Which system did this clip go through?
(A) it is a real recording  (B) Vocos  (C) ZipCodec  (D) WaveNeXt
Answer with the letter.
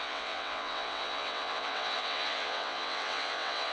D